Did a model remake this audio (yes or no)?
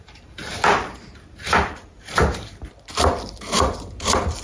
yes